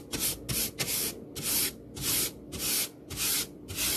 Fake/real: real